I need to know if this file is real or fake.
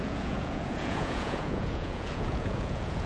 fake